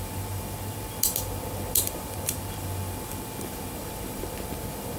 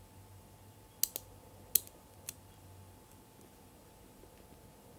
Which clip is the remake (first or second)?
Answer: first